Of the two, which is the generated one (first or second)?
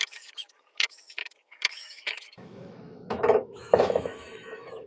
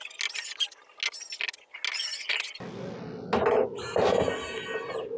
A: first